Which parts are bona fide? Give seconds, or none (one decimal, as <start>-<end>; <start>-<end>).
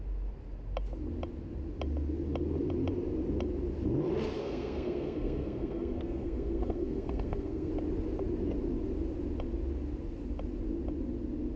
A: 0.0-4.4; 7.7-11.6